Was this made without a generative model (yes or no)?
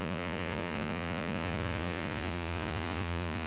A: no